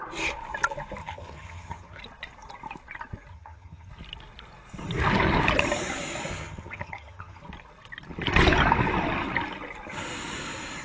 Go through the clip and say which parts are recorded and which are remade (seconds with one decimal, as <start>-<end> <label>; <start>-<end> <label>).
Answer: 0.0-1.0 recorded; 1.0-2.0 remade; 2.0-3.3 recorded; 3.3-3.9 remade; 3.9-6.3 recorded; 6.3-7.4 remade; 7.4-10.8 recorded